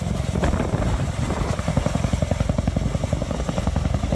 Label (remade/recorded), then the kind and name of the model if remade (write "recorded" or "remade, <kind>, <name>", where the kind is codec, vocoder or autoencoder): recorded